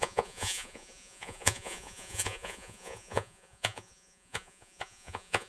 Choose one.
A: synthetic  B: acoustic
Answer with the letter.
A